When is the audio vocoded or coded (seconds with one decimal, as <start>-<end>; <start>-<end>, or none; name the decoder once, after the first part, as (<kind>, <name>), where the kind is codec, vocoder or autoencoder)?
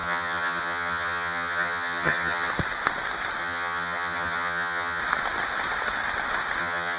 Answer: 0.0-2.5 (vocoder, HiFi-GAN); 3.4-5.0; 6.6-7.0